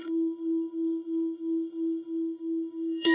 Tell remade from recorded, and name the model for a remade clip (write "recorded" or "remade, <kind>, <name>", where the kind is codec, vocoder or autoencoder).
remade, codec, SNAC